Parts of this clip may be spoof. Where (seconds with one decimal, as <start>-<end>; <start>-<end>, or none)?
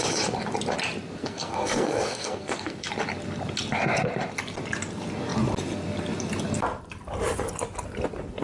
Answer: 1.2-2.9